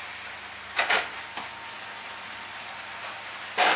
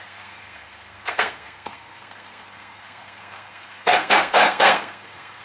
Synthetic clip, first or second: second